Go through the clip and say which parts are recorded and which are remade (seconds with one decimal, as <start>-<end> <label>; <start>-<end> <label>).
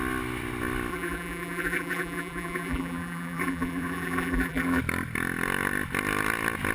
0.0-0.9 recorded; 0.9-4.8 remade; 4.8-6.7 recorded